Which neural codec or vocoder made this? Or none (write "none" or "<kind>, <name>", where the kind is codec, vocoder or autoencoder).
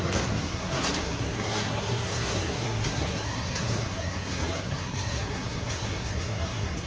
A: codec, SNAC